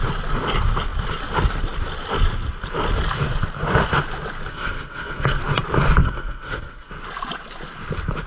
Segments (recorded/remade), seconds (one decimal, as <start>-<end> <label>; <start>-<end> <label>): 0.0-4.5 recorded; 4.5-5.4 remade; 5.4-6.0 recorded; 6.0-6.9 remade; 6.9-8.3 recorded